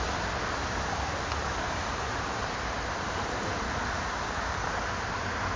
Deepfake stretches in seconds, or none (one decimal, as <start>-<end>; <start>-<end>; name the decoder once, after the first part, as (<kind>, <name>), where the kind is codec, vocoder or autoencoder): 1.9-4.8 (vocoder, BigVGAN v2)